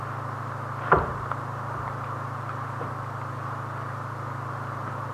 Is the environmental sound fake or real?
real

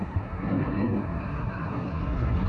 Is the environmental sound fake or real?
fake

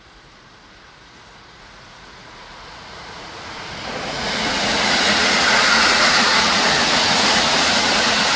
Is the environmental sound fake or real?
fake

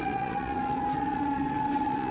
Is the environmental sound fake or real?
fake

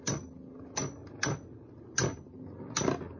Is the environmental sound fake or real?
real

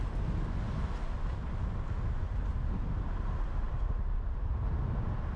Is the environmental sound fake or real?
real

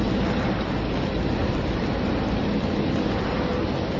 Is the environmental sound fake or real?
real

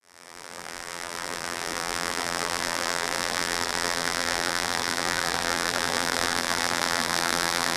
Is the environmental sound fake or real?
fake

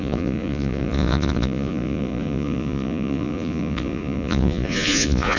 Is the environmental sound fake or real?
fake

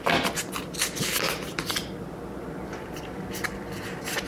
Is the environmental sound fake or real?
real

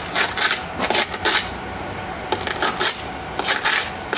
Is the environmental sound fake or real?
real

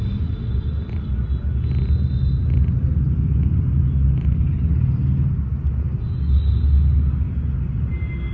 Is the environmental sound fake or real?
real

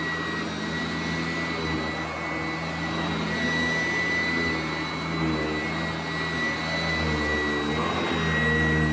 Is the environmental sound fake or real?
real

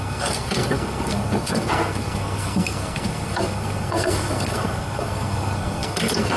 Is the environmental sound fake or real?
fake